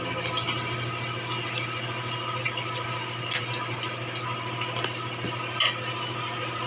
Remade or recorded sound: recorded